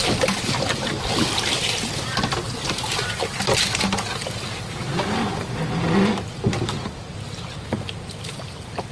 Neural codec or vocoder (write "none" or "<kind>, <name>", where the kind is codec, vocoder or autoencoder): none